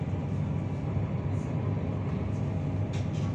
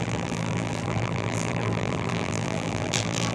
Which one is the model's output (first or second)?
second